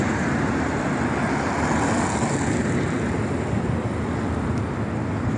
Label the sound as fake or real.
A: real